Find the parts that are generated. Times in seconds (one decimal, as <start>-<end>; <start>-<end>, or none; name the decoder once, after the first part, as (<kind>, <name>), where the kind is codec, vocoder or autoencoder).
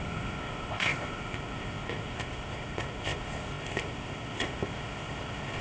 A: 0.0-5.6 (codec, ZipCodec)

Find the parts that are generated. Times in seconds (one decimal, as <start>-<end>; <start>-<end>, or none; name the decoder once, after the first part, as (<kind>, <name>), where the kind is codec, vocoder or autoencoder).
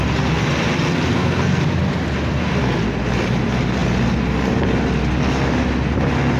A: 1.1-1.6 (codec, SNAC)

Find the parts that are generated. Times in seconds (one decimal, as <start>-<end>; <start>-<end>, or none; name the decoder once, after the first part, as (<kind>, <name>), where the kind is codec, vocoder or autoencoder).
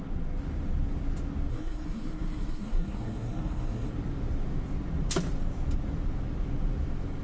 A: 1.5-3.9 (codec, SNAC)